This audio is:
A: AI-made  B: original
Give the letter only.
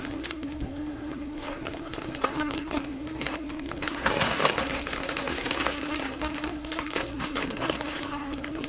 A